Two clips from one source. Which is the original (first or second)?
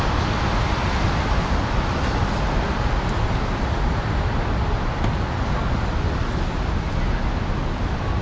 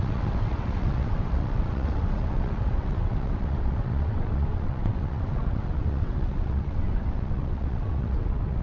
first